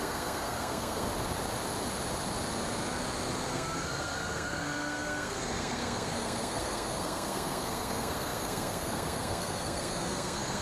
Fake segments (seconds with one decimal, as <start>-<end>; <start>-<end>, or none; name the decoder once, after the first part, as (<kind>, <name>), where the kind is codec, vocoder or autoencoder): 0.0-1.1 (codec, SNAC); 3.5-10.6